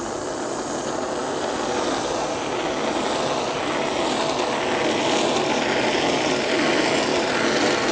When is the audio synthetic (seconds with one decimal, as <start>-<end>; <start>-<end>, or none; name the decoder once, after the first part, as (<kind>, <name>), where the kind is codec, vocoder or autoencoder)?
none